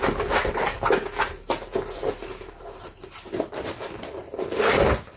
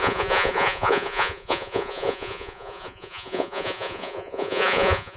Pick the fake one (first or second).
second